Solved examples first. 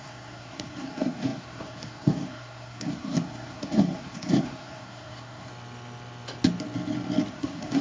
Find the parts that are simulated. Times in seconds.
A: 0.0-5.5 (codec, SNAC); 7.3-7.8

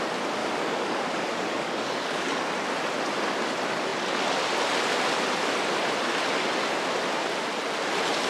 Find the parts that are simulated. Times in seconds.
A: 0.4-2.4 (codec, DAC)

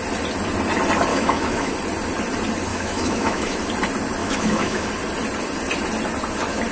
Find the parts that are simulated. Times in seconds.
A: 1.1-1.7 (autoencoder, DAC-VAE); 2.7-3.6; 4.2-4.9

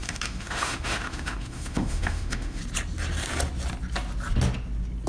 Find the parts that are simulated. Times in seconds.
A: 0.0-2.6 (autoencoder, DAC-VAE)

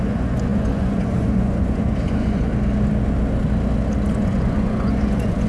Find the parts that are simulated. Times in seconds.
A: 0.0-2.5 (vocoder, Vocos); 4.1-5.5

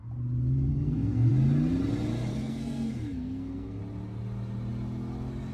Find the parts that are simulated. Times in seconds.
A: 0.7-1.3 (codec, SNAC); 2.3-3.8